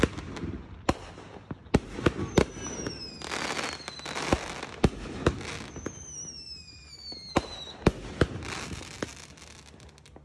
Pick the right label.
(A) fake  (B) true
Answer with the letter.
B